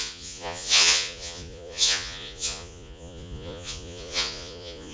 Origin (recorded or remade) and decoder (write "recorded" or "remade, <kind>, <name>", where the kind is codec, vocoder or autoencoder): remade, vocoder, Vocos